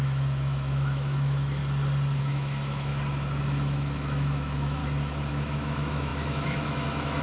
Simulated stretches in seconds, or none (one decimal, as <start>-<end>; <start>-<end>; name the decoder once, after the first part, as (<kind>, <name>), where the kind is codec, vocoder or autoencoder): 0.0-1.6 (autoencoder, DAC-VAE); 2.2-2.9; 3.4-4.8; 5.3-7.2